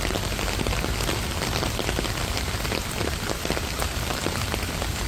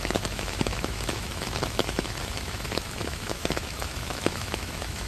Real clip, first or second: first